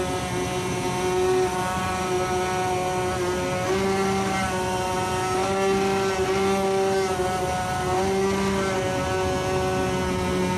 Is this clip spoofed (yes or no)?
no